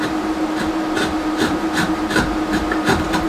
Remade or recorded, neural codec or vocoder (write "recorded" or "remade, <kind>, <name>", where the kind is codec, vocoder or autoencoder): remade, vocoder, BigVGAN v2